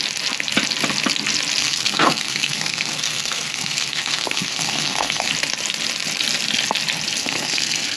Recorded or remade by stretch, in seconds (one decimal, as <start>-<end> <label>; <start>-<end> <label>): 0.0-1.6 recorded; 1.6-5.3 remade; 5.3-7.2 recorded; 7.2-8.0 remade